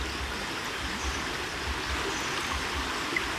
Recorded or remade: recorded